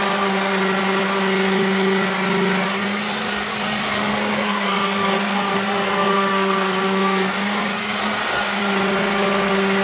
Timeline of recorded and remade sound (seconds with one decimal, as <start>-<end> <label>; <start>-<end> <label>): 0.0-4.1 recorded; 4.1-7.3 remade; 7.3-9.8 recorded